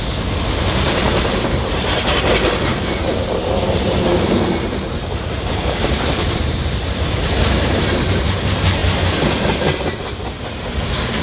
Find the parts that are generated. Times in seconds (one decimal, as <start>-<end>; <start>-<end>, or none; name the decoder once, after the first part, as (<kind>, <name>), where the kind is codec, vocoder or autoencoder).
2.7-6.8 (vocoder, BigVGAN v2)

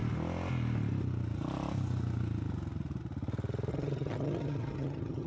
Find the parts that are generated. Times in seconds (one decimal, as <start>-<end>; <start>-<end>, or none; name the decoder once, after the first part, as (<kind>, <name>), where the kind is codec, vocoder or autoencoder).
3.7-5.3 (vocoder, HiFi-GAN)

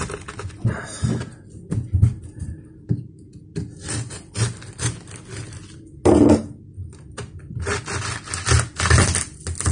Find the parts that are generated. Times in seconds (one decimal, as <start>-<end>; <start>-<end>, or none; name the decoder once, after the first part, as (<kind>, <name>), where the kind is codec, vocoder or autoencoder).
none